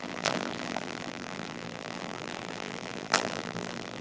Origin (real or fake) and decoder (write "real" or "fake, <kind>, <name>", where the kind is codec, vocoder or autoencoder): fake, vocoder, BigVGAN v2